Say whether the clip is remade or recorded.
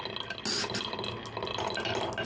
recorded